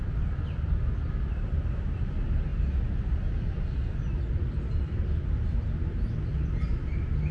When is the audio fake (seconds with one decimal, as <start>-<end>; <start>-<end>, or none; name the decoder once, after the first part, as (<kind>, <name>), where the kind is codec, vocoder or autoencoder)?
none